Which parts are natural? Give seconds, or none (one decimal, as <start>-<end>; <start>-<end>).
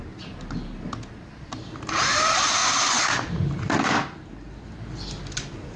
0.0-5.8